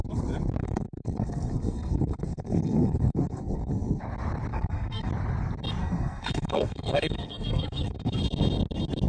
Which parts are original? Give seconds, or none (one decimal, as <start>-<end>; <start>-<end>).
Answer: 0.0-0.6; 4.0-4.5; 5.1-5.8; 8.2-9.1